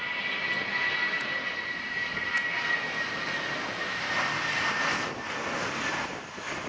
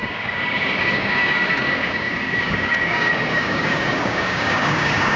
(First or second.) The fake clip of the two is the second